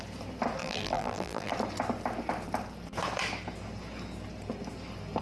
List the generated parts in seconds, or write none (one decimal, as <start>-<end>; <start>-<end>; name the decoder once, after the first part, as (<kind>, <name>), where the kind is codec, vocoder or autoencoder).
0.6-1.5 (vocoder, BigVGAN v2)